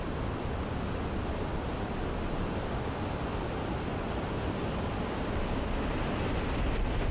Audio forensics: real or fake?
real